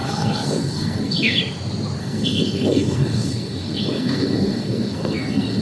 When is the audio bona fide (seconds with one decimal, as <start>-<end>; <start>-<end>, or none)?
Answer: 1.4-2.0